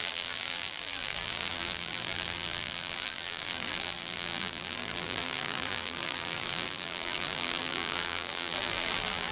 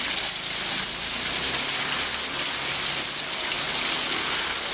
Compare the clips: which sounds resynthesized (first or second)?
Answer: first